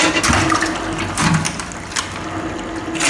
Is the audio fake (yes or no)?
no